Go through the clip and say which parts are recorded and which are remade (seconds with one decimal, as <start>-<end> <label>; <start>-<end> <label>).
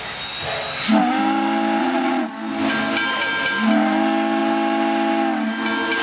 0.0-1.8 recorded; 1.8-2.3 remade; 2.3-6.0 recorded